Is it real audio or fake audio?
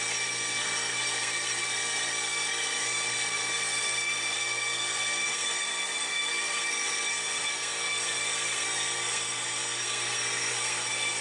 fake